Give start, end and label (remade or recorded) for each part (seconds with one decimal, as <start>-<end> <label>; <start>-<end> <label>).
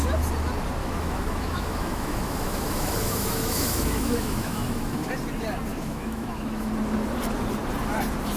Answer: 0.0-0.8 recorded; 0.8-5.1 remade; 5.1-5.7 recorded; 5.7-6.7 remade; 6.7-8.4 recorded